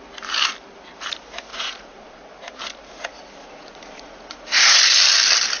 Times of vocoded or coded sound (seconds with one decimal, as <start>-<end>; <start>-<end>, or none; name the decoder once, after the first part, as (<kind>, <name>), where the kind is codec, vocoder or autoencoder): 1.5-2.2 (vocoder, Vocos); 3.4-4.8

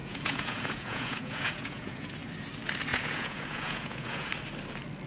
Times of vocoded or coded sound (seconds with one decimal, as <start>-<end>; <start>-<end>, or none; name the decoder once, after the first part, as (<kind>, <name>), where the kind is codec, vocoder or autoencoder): 0.0-2.1 (vocoder, Vocos); 2.9-4.3